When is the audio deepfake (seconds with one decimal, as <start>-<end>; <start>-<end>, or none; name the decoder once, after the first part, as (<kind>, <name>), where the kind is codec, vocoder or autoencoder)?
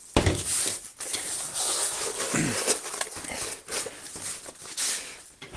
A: 1.6-2.1 (vocoder, Vocos)